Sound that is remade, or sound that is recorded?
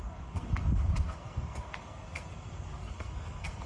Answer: remade